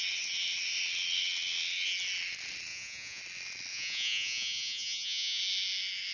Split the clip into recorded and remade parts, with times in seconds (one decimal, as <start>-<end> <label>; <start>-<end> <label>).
0.0-2.7 recorded; 2.7-3.2 remade; 3.2-3.7 recorded; 3.7-5.4 remade; 5.4-6.1 recorded